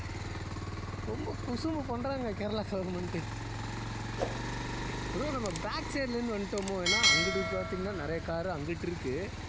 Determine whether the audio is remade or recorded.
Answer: recorded